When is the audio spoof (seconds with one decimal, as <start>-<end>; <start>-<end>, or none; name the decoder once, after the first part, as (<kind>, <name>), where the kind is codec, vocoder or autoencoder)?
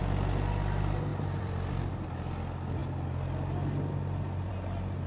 1.1-1.7 (vocoder, BigVGAN v2)